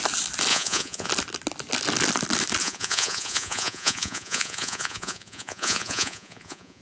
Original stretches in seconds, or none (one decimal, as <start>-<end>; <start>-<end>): 0.0-0.5; 1.1-2.6